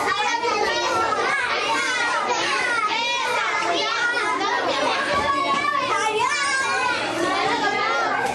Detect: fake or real real